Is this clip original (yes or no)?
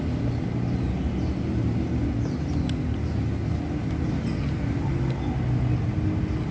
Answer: yes